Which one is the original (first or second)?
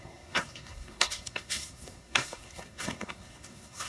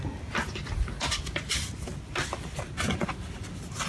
second